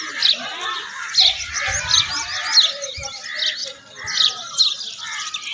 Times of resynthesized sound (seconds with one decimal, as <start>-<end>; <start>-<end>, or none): 3.6-4.6